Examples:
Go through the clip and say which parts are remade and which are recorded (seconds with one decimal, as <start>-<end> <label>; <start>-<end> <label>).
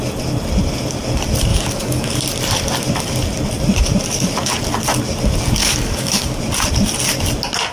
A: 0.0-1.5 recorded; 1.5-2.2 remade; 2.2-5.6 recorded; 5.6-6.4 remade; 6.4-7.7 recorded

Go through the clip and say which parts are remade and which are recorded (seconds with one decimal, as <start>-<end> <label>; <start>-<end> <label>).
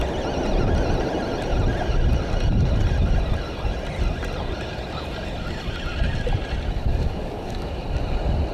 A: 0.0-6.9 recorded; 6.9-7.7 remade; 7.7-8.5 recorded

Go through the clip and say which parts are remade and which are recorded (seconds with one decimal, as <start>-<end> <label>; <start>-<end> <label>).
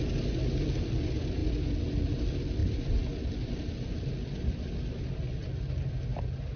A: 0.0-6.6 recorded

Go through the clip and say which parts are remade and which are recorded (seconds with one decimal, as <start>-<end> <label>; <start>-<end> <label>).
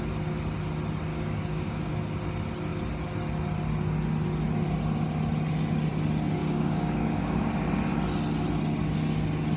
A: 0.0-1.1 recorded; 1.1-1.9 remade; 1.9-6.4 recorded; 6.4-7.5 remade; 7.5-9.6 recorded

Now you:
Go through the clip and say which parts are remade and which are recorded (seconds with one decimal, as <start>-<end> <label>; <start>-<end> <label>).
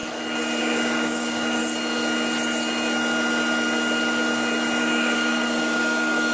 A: 0.0-0.6 recorded; 0.6-1.6 remade; 1.6-4.8 recorded; 4.8-6.3 remade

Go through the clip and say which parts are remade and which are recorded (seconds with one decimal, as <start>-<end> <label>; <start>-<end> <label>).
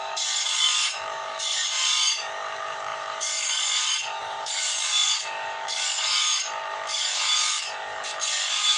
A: 0.0-8.8 remade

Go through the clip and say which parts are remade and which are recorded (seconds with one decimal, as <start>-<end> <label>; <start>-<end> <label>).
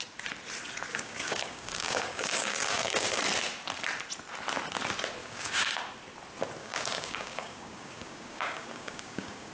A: 0.0-0.9 recorded; 0.9-3.2 remade; 3.2-5.2 recorded; 5.2-5.8 remade; 5.8-6.6 recorded; 6.6-9.5 remade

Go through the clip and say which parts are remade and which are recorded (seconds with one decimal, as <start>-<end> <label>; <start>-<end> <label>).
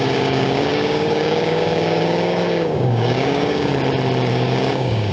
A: 0.0-3.7 remade; 3.7-4.3 recorded; 4.3-5.1 remade